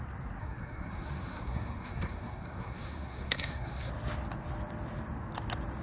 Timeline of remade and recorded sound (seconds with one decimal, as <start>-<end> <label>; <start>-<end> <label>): 0.0-0.4 recorded; 0.4-3.9 remade; 3.9-5.8 recorded